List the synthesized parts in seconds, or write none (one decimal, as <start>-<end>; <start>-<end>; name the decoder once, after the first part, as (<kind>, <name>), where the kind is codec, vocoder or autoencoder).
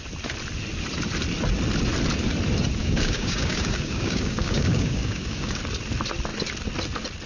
2.8-5.6 (codec, DAC)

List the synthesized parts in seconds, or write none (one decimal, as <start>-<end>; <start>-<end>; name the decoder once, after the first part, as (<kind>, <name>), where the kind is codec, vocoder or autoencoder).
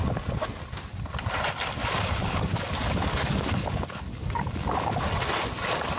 1.8-5.0 (codec, DAC)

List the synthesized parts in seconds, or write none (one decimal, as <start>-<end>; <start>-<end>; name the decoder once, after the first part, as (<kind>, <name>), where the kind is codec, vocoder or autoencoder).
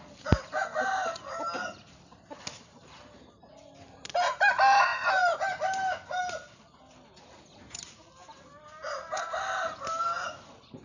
none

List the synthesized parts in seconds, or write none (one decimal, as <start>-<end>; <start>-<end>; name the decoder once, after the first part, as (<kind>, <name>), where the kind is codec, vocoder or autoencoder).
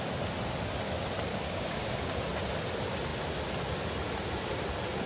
1.3-2.3 (codec, DAC)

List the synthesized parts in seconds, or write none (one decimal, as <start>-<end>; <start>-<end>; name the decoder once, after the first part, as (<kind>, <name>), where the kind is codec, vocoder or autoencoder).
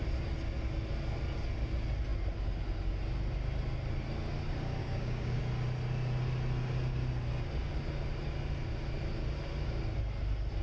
4.8-5.4 (codec, DAC)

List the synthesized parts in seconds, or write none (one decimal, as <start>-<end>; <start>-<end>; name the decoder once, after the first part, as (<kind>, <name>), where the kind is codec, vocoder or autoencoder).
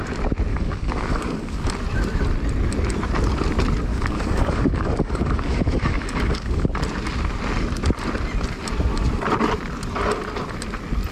0.5-1.7 (codec, DAC); 3.9-6.7